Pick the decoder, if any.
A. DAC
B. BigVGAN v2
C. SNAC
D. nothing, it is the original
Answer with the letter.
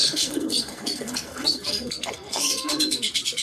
C